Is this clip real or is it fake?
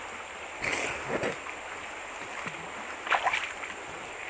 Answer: real